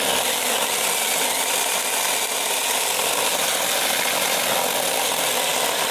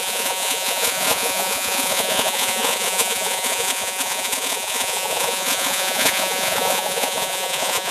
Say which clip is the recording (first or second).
first